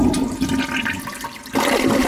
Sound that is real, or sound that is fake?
real